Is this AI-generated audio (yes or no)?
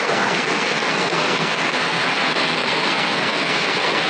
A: yes